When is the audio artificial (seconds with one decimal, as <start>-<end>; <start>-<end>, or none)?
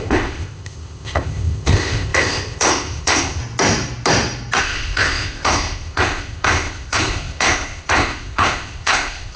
0.0-3.4; 4.6-9.4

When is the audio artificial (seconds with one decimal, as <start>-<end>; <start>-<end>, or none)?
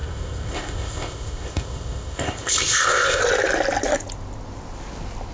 0.0-3.2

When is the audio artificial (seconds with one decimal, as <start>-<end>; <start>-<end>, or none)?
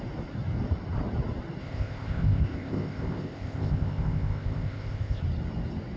1.6-5.2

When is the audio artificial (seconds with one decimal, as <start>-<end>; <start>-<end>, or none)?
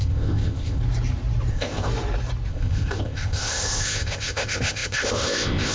0.0-0.8; 1.5-1.9; 2.5-5.7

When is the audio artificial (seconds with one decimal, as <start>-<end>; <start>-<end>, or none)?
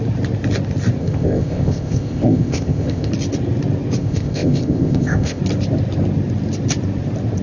1.0-3.1; 4.0-5.4